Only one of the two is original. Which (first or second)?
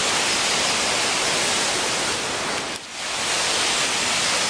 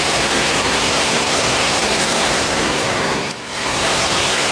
first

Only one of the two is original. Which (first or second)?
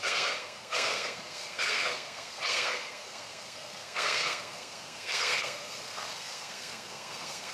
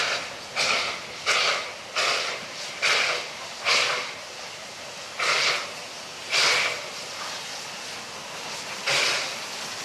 second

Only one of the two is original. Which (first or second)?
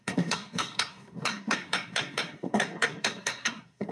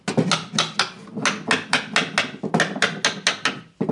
second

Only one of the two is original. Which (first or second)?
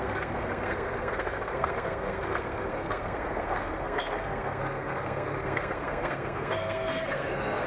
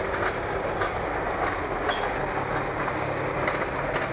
second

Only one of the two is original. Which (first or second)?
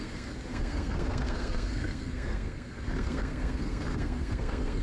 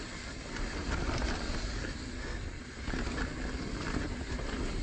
second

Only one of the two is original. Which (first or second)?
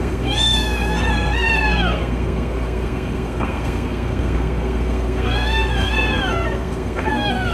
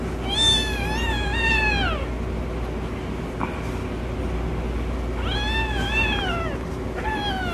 second